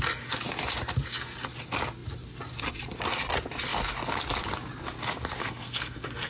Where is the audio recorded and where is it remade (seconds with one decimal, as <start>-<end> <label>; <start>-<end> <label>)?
0.0-5.4 recorded; 5.4-6.3 remade